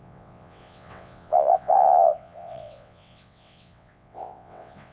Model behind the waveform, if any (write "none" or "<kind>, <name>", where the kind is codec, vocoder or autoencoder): vocoder, WaveNeXt